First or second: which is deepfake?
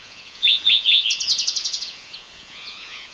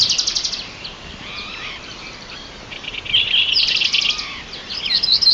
first